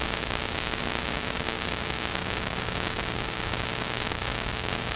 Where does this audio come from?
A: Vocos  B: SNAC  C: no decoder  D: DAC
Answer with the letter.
D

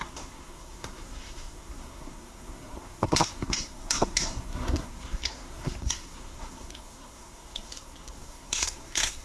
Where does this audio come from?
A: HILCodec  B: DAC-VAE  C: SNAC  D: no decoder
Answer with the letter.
C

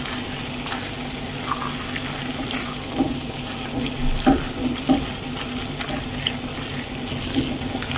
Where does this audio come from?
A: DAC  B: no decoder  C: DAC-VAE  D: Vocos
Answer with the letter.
B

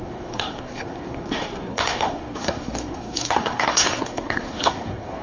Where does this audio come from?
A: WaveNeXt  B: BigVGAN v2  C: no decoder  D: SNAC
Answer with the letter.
D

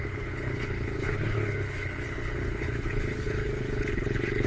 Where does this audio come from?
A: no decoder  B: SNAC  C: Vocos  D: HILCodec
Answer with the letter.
D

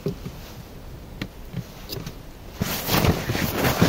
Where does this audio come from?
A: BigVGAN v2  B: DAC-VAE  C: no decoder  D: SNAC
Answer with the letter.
C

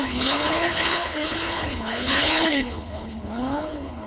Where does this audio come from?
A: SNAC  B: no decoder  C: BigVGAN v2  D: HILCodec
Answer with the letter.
D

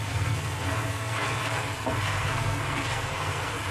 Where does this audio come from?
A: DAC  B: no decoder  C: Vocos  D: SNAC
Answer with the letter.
D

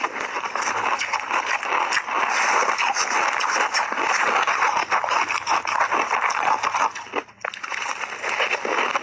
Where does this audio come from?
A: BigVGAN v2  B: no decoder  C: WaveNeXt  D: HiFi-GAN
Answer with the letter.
B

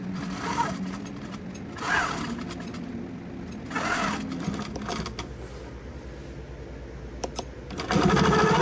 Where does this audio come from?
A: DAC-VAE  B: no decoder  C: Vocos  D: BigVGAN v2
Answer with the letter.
B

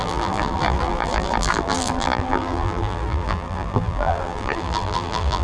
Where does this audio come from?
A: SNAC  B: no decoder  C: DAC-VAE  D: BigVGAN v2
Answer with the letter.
D